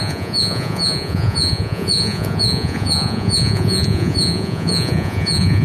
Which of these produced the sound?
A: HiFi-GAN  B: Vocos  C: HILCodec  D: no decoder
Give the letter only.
B